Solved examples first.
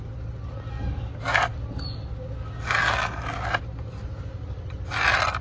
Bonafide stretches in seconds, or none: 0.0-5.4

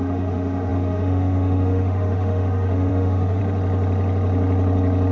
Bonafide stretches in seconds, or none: 3.4-5.1

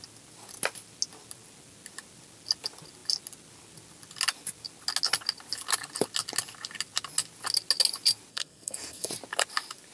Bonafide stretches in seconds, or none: 0.0-8.3; 9.1-9.9

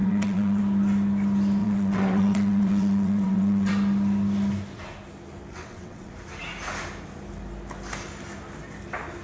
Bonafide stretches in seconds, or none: 0.6-1.6; 3.7-5.5; 6.1-9.2

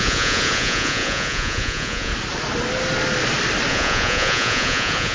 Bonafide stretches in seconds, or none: 2.1-3.7

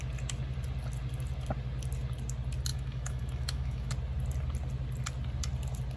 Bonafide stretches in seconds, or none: 0.0-2.7; 3.9-6.0

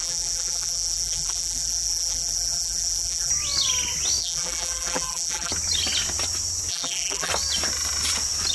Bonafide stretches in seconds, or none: 3.3-4.2; 5.5-6.7; 7.3-8.5

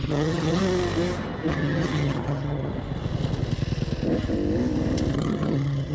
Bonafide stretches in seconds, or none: 0.6-1.5; 2.7-5.1